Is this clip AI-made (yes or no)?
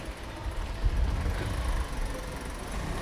no